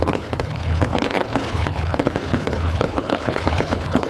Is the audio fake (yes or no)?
yes